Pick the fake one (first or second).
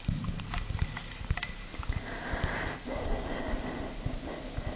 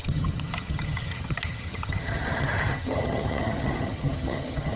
second